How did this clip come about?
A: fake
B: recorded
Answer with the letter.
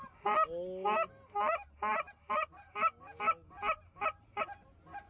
B